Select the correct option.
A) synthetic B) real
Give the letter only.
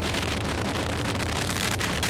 A